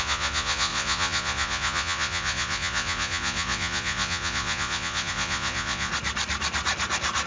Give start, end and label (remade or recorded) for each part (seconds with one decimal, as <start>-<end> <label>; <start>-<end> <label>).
0.0-5.9 remade; 5.9-7.3 recorded